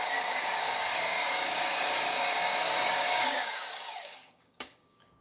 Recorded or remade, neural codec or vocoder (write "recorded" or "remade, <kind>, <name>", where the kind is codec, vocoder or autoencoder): remade, codec, DAC